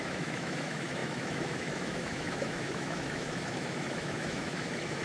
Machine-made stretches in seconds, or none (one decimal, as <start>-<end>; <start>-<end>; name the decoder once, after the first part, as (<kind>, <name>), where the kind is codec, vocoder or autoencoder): 0.0-5.0 (autoencoder, DAC-VAE)